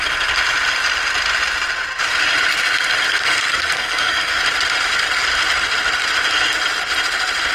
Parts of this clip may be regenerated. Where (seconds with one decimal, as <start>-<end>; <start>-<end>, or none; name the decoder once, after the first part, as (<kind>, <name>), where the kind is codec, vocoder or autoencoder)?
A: 3.1-4.4 (codec, SNAC)